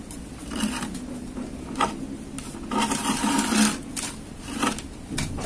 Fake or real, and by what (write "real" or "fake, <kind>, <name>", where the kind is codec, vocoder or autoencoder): real